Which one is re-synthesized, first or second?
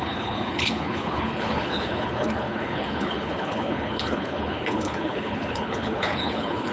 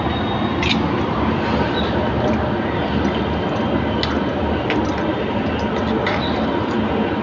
first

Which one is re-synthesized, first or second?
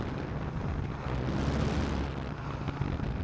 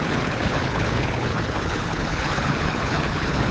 second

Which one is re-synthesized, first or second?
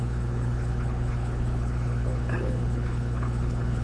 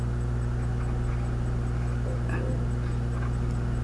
first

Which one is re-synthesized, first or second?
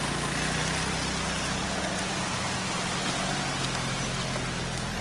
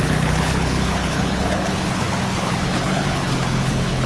second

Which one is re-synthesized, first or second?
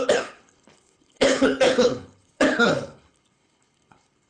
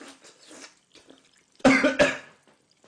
first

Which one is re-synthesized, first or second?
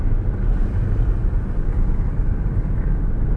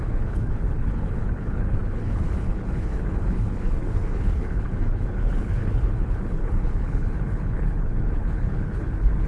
second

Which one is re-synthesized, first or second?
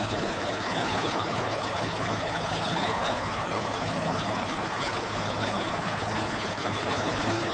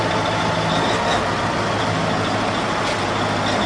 first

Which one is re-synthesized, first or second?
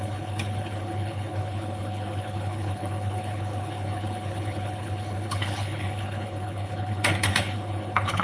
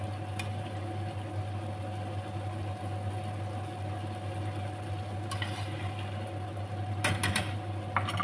first